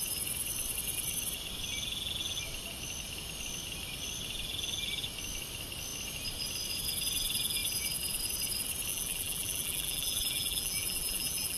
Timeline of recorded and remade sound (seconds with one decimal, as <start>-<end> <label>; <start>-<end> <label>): 0.0-8.9 recorded; 8.9-11.6 remade